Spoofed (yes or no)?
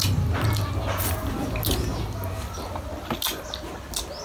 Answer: no